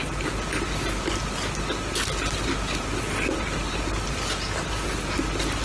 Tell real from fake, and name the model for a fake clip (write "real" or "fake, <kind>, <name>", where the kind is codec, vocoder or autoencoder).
real